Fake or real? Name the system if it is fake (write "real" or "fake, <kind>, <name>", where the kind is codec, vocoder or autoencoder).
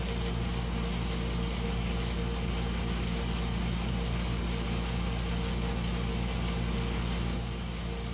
real